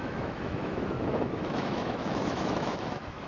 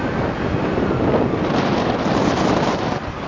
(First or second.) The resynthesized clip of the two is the first